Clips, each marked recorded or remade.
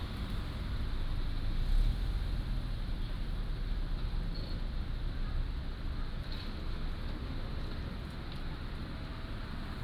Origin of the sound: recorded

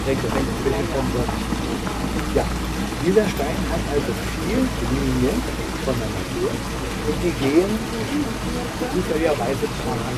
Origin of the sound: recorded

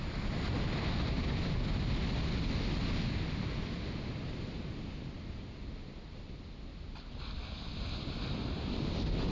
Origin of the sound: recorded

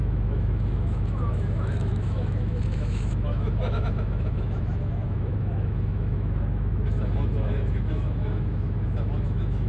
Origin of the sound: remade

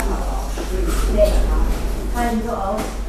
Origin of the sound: recorded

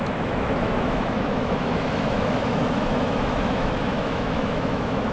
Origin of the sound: remade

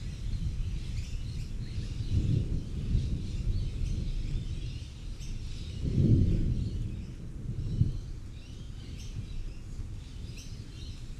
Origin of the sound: recorded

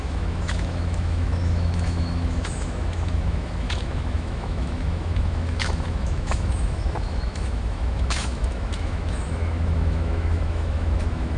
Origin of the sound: remade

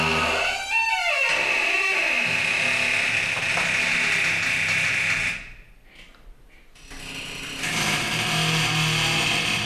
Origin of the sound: recorded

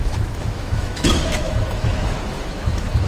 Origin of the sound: remade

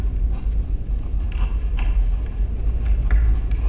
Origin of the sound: recorded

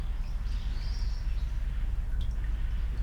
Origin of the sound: recorded